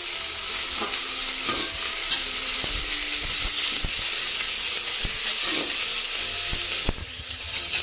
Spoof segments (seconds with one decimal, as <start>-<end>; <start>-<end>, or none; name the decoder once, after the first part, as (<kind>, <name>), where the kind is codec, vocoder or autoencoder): 7.0-7.8 (vocoder, HiFi-GAN)